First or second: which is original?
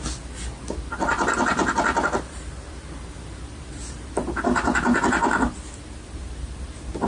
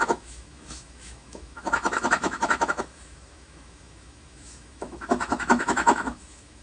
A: first